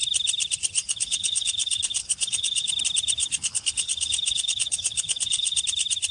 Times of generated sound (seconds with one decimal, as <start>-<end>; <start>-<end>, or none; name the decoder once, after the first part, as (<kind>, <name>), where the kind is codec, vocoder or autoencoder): 0.8-2.7 (codec, HILCodec); 3.2-5.6